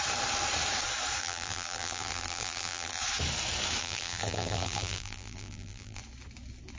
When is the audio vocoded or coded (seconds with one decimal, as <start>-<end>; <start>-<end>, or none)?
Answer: 1.2-3.0; 3.8-6.0